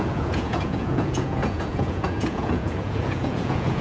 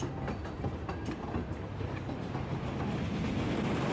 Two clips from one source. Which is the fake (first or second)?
first